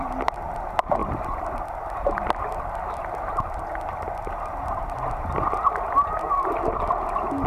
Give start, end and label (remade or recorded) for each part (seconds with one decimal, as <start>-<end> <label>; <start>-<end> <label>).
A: 0.0-1.0 recorded; 1.0-3.1 remade; 3.1-7.5 recorded